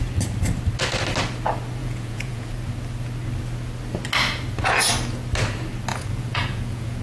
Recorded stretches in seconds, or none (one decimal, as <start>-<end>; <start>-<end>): 0.0-1.8; 2.5-5.9